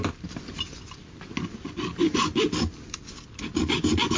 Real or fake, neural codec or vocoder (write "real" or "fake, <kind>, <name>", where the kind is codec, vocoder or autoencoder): real